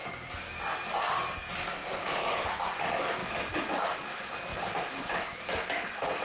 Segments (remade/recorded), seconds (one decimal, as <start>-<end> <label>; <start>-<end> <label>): 0.0-1.8 recorded; 1.8-2.6 remade; 2.6-4.5 recorded; 4.5-5.4 remade; 5.4-6.2 recorded